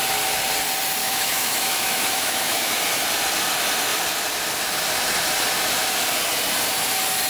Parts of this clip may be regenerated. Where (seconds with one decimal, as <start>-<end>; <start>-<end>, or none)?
1.0-2.8